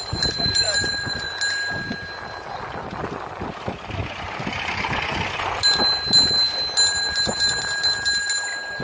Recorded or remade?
recorded